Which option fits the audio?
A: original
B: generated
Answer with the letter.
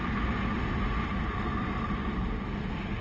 A